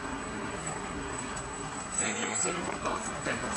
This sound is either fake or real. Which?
fake